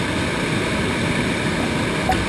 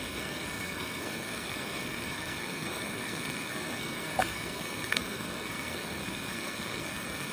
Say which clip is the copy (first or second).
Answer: second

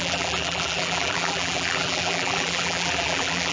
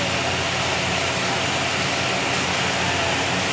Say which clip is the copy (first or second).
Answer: first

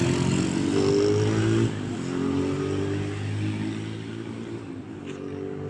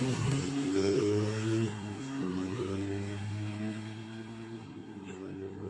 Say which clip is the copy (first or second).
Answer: second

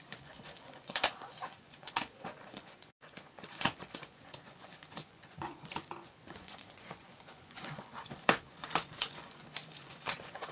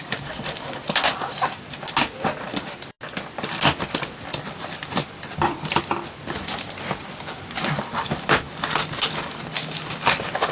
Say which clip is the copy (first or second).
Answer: first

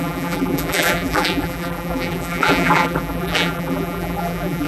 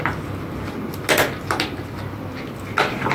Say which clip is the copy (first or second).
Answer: first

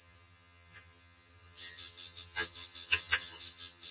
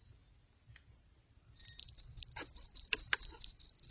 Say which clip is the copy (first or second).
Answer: first